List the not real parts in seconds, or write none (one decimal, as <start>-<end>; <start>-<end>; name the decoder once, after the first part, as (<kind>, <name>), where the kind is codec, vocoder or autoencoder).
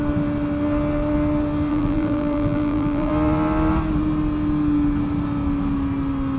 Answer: 1.7-3.1 (vocoder, BigVGAN v2)